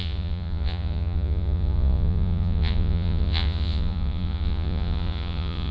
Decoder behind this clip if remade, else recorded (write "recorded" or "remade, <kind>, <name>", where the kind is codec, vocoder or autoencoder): remade, vocoder, Vocos